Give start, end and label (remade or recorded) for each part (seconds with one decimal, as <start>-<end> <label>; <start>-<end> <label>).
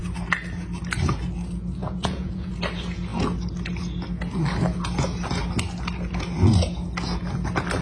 0.0-1.8 recorded; 1.8-2.5 remade; 2.5-7.8 recorded